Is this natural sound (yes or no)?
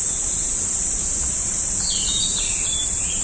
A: no